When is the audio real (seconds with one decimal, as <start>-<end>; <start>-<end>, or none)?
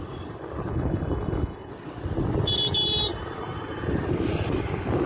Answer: 0.0-0.7; 1.7-5.1